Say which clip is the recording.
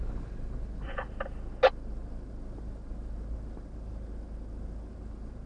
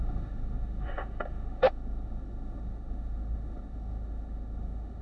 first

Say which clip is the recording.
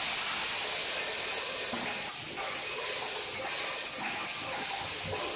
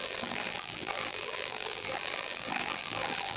first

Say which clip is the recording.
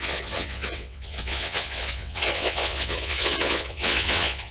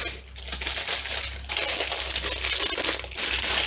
second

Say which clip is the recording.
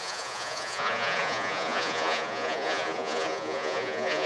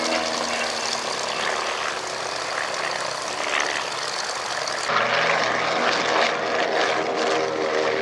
second